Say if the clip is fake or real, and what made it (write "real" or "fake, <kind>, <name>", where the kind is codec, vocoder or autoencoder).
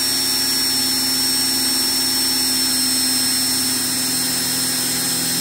real